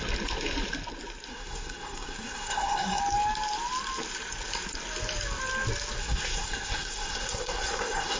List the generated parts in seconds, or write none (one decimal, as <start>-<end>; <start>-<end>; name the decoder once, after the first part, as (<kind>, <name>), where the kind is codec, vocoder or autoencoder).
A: 1.3-3.0 (codec, SNAC); 6.0-8.2